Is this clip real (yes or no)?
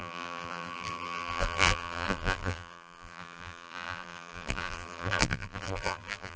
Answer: no